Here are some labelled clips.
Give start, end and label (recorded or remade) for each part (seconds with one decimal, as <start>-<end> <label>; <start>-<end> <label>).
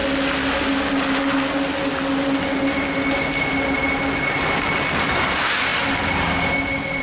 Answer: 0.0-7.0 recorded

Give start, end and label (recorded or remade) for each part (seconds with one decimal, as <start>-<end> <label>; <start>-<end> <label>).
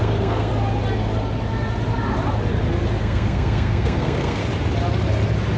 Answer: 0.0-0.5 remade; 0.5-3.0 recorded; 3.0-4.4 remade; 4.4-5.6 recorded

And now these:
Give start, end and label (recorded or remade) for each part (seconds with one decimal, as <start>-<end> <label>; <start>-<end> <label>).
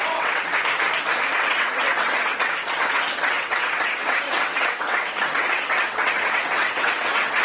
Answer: 0.0-0.5 remade; 0.5-1.4 recorded; 1.4-7.4 remade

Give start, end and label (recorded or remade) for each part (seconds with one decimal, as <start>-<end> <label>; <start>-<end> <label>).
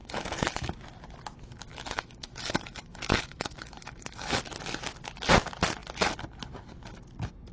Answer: 0.0-0.8 remade; 0.8-1.7 recorded; 1.7-4.3 remade; 4.3-7.5 recorded